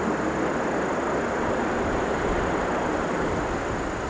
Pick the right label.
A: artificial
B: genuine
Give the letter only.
B